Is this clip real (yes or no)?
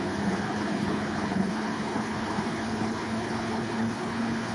no